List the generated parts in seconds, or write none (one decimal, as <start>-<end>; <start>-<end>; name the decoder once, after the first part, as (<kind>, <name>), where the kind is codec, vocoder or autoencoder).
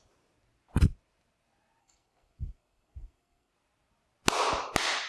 1.8-3.5 (codec, SNAC)